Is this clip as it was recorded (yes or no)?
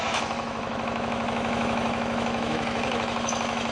no